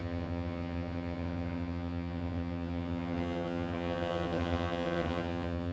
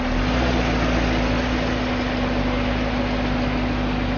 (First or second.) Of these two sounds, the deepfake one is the first